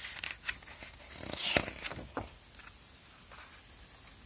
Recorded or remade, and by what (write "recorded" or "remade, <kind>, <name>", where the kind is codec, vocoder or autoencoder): recorded